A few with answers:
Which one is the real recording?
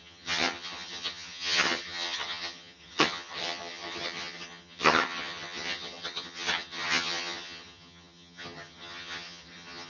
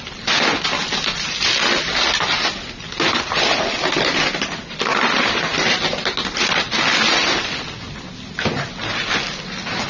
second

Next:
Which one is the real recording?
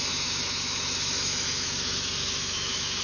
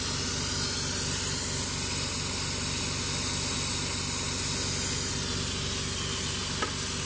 second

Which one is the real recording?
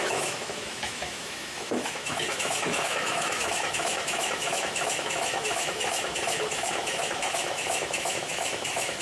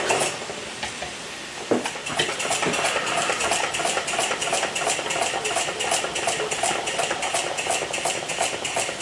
second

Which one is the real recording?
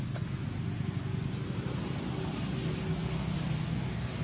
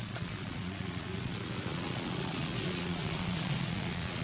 first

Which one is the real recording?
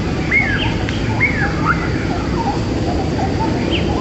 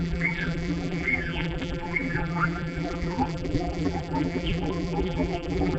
first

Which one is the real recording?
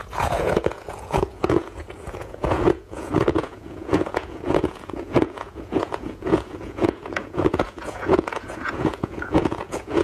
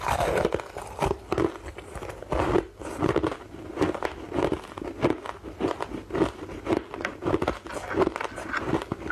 second